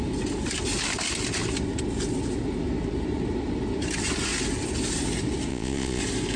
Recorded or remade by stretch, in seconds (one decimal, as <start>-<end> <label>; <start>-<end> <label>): 0.0-5.5 recorded; 5.5-6.0 remade; 6.0-6.4 recorded